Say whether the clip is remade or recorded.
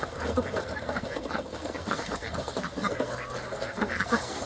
remade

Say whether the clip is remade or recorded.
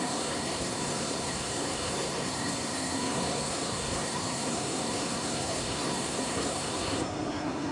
remade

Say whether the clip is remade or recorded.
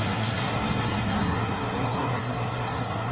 remade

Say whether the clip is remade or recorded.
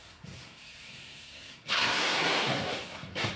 remade